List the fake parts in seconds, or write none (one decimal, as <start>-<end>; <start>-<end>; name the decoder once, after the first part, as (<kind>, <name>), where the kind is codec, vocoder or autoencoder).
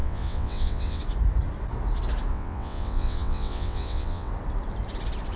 0.0-1.0 (vocoder, WaveNeXt); 2.3-4.3